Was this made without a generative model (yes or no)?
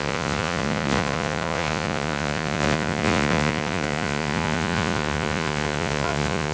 no